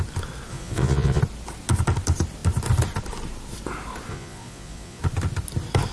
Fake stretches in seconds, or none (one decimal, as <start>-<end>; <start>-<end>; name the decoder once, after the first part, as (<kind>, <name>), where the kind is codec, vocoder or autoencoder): 0.5-1.2 (vocoder, Vocos); 4.1-5.0